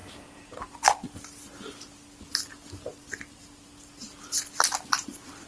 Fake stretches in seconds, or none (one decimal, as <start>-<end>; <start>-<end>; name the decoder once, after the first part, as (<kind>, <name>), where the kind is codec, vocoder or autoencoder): none